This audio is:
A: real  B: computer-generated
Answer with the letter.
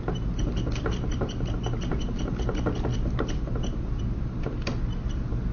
A